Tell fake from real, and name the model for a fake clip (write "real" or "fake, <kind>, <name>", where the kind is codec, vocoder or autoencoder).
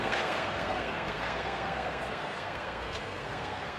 fake, codec, SNAC